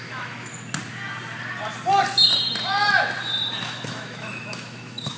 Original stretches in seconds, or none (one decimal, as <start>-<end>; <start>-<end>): 0.5-3.6

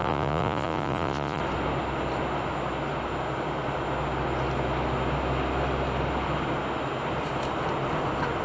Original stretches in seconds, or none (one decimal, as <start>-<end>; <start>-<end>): 1.4-8.4